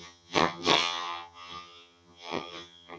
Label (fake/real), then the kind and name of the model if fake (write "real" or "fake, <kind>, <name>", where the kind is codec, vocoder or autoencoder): fake, vocoder, HiFi-GAN